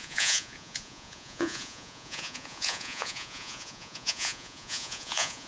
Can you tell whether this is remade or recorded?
remade